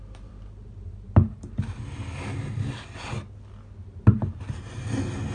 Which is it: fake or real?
real